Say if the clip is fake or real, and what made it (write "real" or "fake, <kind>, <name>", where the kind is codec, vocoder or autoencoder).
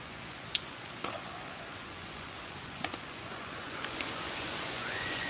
fake, vocoder, Vocos